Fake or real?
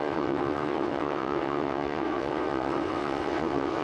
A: fake